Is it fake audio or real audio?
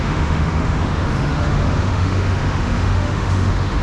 fake